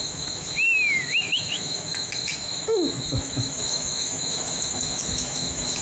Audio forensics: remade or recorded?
remade